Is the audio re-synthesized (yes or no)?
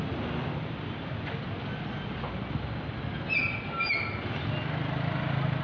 no